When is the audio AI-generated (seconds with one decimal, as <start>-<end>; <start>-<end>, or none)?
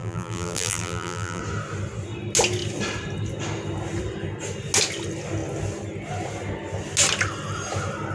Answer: 0.0-1.4